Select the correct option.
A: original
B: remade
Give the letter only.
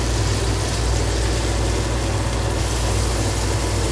A